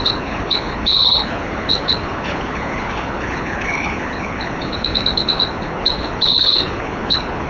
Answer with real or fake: fake